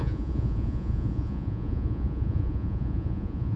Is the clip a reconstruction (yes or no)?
yes